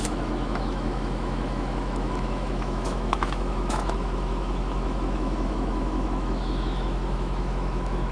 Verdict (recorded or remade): remade